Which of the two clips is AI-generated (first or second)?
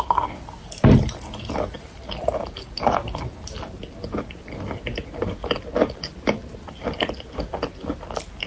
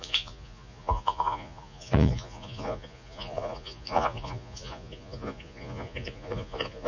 second